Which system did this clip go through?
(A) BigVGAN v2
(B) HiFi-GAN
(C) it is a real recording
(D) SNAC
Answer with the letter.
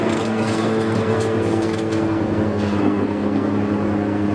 D